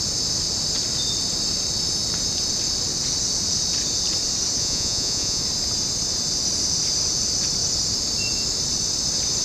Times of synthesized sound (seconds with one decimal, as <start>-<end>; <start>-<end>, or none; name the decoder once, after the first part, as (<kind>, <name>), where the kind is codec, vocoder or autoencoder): 4.6-5.4 (vocoder, Vocos)